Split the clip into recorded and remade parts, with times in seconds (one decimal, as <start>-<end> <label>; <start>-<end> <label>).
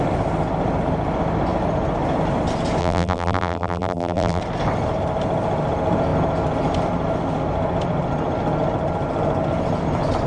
0.0-2.8 recorded; 2.8-4.4 remade; 4.4-10.3 recorded